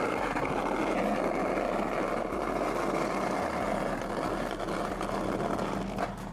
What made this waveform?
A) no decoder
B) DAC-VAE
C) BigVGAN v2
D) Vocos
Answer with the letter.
A